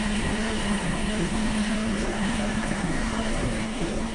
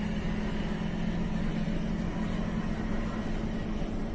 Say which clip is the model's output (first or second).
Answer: first